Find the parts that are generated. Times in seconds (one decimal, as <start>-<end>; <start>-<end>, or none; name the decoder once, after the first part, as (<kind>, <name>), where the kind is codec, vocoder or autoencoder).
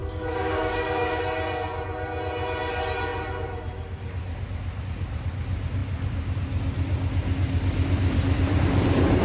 0.0-1.2 (codec, DAC)